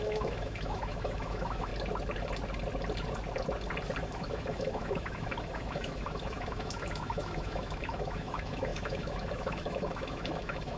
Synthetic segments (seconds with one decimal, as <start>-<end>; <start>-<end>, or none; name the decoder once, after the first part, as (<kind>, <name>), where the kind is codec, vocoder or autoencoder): 0.0-1.7 (autoencoder, DAC-VAE); 4.0-10.8